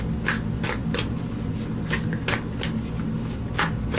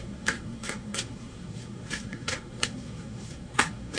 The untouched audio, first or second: first